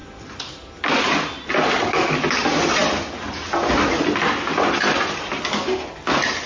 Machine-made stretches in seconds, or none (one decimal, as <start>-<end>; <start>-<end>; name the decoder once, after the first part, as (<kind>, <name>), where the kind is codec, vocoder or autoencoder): none